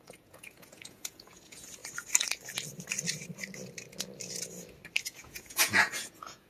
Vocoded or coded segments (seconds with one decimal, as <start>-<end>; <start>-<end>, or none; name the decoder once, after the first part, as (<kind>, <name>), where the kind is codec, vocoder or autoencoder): 0.0-1.8 (vocoder, Vocos); 5.0-6.5

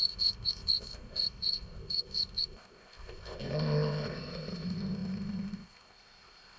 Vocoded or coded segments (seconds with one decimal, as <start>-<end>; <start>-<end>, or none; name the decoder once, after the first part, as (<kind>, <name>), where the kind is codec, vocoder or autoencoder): 0.0-6.6 (codec, ZipCodec)

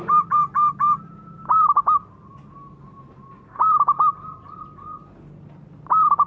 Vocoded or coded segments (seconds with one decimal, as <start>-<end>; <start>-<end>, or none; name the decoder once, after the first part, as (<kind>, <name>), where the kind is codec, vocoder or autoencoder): none